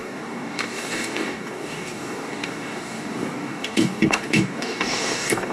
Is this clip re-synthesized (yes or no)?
yes